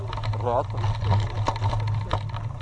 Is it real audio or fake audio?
real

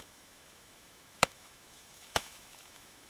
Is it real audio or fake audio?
fake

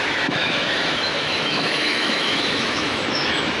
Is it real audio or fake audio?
fake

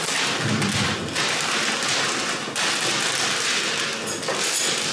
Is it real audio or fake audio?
real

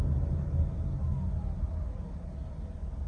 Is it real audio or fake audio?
real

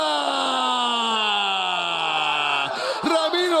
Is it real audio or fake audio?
real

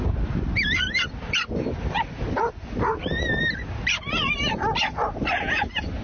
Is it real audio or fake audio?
real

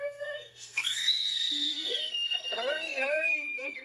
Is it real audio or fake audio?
fake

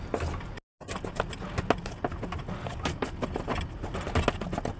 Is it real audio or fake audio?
real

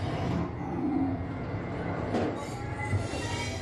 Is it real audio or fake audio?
real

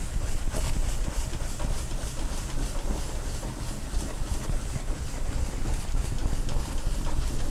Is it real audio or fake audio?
real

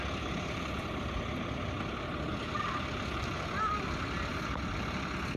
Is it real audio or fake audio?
fake